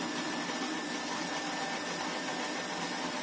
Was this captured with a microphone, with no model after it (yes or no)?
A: yes